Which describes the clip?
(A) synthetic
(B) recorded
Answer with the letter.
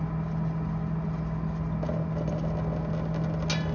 B